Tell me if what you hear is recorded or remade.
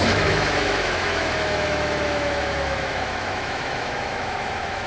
remade